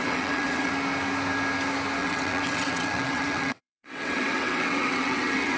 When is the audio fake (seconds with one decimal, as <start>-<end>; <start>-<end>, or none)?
0.0-0.7; 2.0-5.6